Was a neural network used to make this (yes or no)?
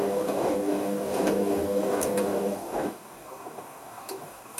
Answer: yes